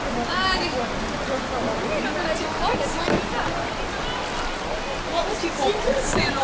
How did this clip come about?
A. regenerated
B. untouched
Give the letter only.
B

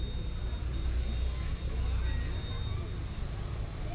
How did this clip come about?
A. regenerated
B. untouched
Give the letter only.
B